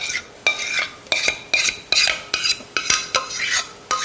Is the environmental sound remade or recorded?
recorded